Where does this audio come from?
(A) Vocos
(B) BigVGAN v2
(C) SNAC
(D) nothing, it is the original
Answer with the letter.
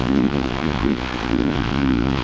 A